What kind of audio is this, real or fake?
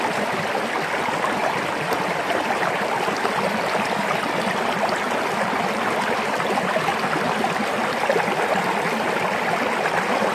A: real